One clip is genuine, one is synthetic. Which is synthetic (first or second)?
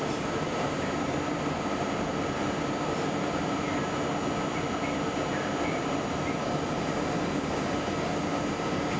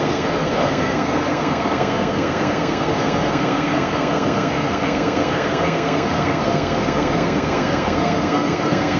second